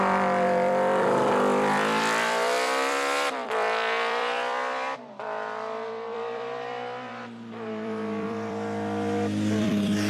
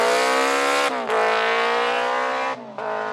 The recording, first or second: second